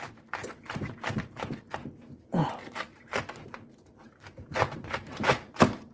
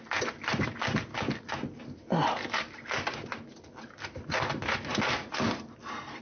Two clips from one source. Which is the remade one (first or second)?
first